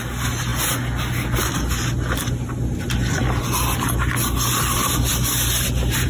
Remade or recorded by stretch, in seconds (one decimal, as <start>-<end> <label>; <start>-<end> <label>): 0.0-6.1 recorded